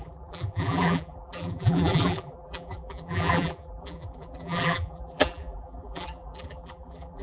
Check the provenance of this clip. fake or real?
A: fake